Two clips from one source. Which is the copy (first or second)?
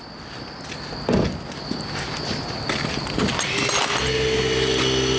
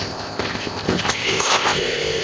second